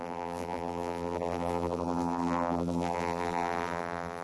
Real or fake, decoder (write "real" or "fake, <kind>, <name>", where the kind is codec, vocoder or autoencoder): fake, vocoder, BigVGAN v2